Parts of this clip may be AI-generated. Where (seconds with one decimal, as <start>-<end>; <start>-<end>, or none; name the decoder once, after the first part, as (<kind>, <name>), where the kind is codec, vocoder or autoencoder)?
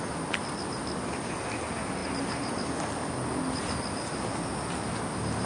none